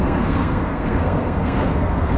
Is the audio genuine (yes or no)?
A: no